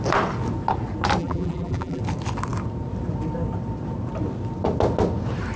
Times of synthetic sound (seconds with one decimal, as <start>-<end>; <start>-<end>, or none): 1.2-2.0